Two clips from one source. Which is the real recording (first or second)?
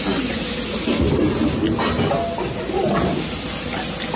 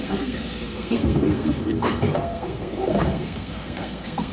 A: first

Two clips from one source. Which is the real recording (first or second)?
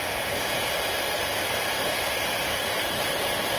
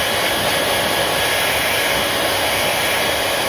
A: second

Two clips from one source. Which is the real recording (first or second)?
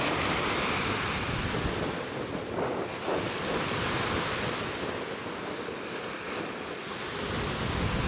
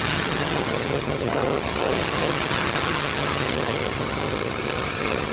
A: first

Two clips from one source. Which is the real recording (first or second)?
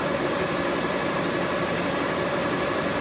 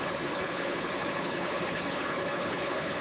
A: first